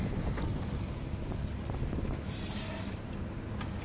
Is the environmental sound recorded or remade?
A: recorded